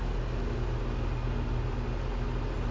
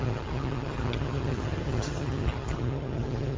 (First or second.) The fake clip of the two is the second